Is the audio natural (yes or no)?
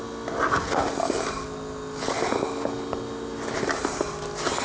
yes